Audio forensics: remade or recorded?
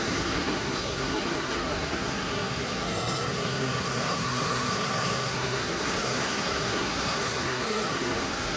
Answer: remade